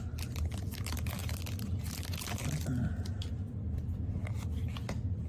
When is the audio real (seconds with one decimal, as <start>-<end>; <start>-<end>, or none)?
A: 0.0-5.3